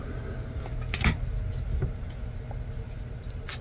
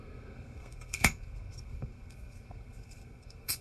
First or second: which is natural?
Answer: first